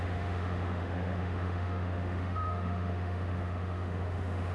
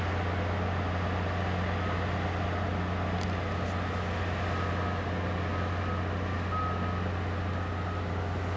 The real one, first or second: second